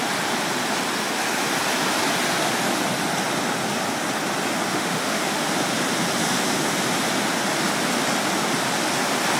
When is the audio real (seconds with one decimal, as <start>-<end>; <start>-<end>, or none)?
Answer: 0.0-4.7; 5.4-9.4